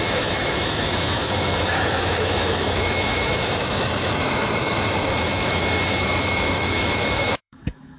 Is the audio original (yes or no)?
no